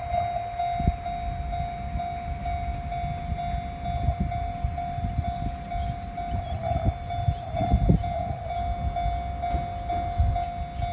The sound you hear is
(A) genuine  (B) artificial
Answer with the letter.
A